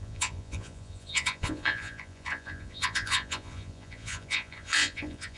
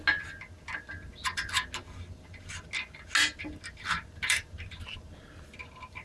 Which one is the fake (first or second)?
first